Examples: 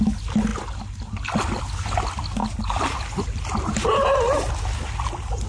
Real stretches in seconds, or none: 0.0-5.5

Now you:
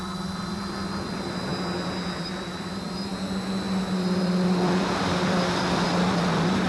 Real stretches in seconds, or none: 1.5-2.2; 3.1-4.2